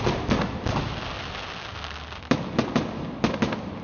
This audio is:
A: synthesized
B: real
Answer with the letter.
B